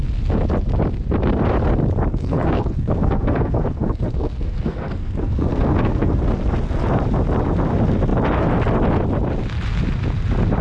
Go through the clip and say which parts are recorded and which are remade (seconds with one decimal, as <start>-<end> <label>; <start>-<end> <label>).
0.0-2.1 recorded; 2.1-6.2 remade; 6.2-10.6 recorded